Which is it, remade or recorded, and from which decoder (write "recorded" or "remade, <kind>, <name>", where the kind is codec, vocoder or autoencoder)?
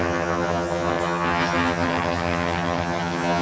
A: remade, vocoder, HiFi-GAN